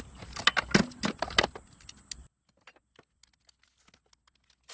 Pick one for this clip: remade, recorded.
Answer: recorded